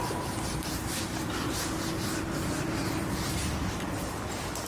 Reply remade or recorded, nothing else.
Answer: remade